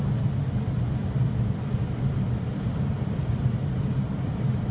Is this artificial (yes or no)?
no